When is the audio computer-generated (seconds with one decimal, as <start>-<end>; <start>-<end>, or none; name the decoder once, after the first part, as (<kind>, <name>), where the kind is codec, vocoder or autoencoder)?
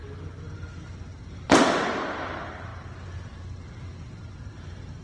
none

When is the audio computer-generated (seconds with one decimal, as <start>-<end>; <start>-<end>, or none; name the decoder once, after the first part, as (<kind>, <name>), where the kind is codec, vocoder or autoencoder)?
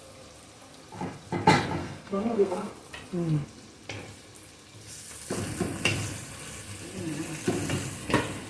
1.8-2.7 (codec, SNAC)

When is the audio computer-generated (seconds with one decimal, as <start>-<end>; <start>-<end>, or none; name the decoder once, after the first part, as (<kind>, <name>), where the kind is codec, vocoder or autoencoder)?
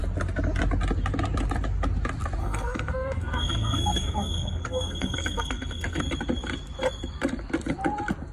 2.4-6.0 (codec, SNAC)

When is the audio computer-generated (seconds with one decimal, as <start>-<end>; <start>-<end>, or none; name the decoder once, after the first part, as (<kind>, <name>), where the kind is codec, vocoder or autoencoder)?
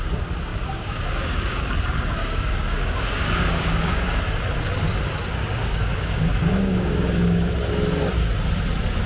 0.5-4.2 (codec, DAC); 5.4-7.5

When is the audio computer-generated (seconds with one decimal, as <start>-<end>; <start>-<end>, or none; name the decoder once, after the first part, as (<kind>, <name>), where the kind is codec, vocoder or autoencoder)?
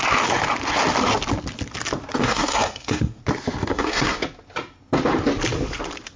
2.2-3.2 (codec, SNAC); 3.7-4.2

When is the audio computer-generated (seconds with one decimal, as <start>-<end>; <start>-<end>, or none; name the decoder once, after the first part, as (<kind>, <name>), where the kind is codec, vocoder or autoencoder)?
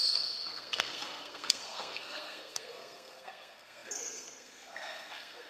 0.0-5.5 (codec, SNAC)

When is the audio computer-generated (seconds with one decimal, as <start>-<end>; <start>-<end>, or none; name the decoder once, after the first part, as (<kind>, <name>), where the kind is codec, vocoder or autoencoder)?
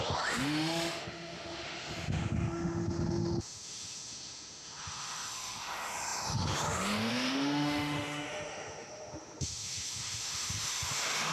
0.0-11.3 (autoencoder, DAC-VAE)